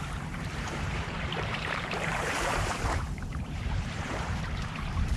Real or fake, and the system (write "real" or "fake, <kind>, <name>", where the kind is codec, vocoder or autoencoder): fake, vocoder, BigVGAN v2